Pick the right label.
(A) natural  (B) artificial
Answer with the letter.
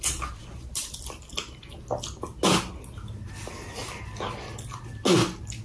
A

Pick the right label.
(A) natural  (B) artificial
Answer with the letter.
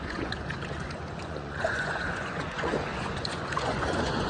B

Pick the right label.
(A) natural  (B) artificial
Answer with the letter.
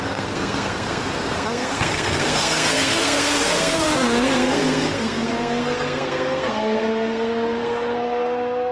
B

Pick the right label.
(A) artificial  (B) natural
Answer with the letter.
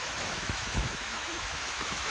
A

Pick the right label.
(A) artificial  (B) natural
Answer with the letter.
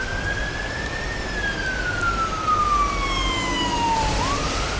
B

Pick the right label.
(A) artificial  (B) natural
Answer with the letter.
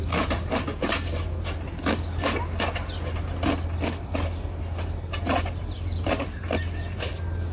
B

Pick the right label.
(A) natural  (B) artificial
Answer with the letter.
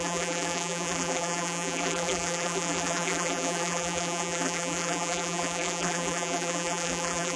B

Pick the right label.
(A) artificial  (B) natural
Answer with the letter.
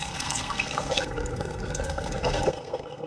A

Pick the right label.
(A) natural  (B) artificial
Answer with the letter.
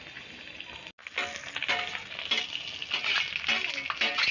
A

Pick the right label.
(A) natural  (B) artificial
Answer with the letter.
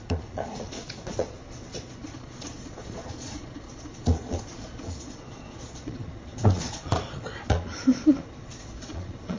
B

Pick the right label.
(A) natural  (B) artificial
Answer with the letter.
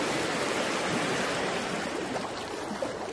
A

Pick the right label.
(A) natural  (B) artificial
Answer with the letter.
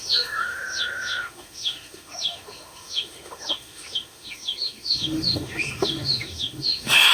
B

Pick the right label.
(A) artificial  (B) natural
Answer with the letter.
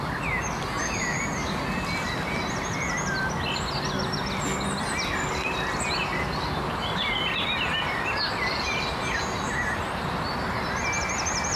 B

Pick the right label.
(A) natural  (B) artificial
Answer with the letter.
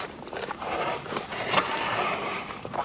B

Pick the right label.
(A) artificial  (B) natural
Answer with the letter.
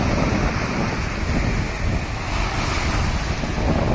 B